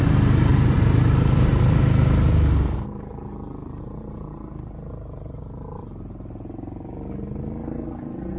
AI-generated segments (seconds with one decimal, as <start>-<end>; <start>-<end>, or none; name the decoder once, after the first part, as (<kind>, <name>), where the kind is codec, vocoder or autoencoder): 0.5-1.0 (vocoder, BigVGAN v2); 3.6-5.8